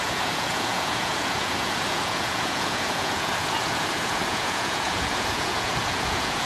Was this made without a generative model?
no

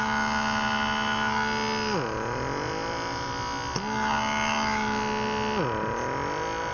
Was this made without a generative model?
yes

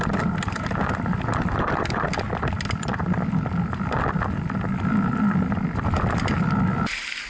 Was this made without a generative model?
yes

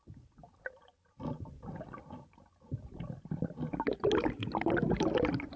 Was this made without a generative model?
yes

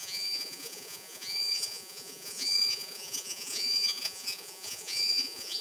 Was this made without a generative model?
no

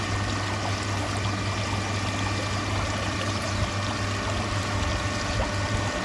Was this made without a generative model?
yes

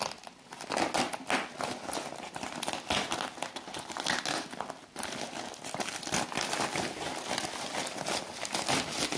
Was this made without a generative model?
yes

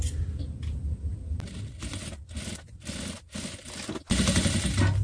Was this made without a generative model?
yes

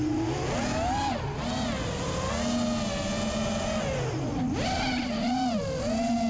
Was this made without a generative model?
yes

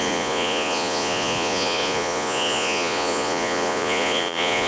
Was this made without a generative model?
no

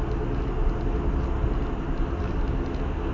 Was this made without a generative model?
yes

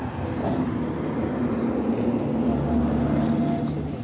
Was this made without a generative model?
yes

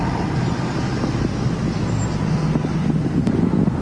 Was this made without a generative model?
yes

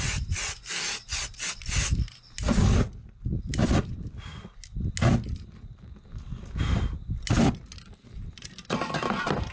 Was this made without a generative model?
yes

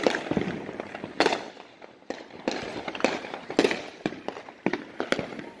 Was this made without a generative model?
yes